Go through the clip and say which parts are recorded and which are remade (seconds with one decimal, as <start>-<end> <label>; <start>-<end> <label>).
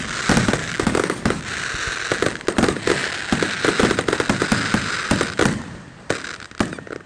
0.0-0.6 recorded; 0.6-1.4 remade; 1.4-7.1 recorded